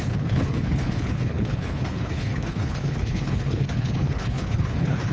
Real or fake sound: fake